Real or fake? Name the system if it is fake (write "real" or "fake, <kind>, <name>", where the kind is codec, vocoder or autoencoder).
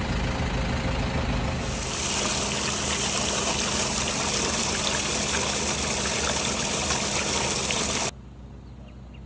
real